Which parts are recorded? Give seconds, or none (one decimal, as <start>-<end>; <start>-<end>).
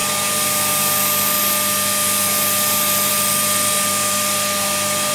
0.0-5.1